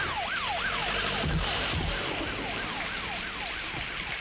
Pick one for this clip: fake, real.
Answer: real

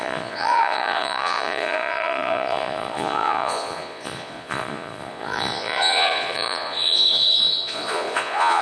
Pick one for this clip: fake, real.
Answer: fake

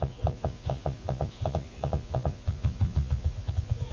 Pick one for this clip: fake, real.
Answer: fake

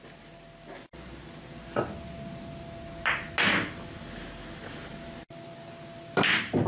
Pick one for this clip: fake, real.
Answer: real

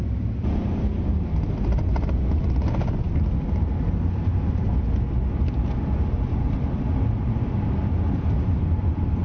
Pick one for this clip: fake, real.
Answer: real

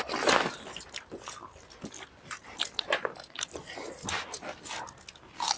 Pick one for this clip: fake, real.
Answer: real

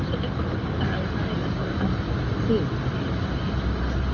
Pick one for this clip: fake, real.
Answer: real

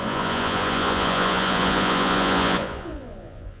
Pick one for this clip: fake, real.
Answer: fake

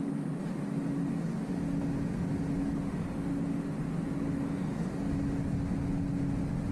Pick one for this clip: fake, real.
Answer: real